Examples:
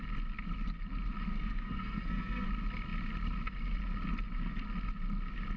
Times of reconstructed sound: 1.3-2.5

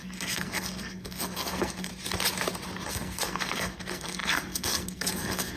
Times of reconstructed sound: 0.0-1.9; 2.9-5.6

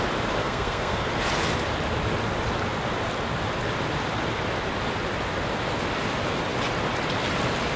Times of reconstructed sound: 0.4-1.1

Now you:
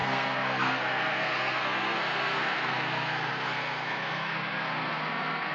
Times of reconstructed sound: 0.0-5.5

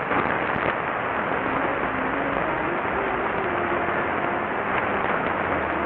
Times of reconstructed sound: none

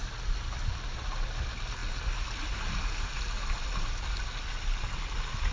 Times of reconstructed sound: none

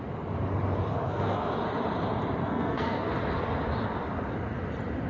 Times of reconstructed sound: 0.9-1.5; 2.4-3.1